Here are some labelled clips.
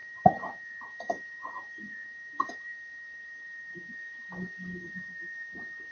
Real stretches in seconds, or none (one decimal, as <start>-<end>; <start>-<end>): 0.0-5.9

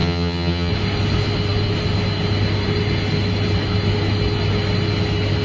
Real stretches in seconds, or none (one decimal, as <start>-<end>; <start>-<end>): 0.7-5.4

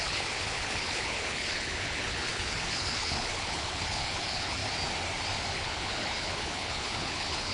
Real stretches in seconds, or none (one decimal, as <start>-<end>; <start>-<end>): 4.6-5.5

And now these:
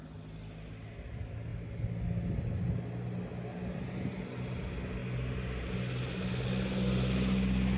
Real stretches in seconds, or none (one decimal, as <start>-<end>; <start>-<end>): 0.0-7.8

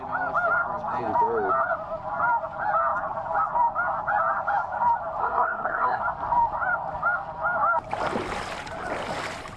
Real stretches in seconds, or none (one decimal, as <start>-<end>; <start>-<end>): 0.0-5.2; 6.0-9.6

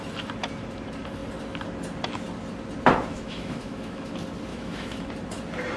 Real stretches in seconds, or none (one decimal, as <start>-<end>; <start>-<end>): 0.0-3.1; 4.1-4.5; 5.1-5.8

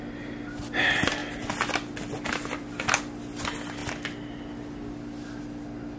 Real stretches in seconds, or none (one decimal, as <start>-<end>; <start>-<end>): 0.0-6.0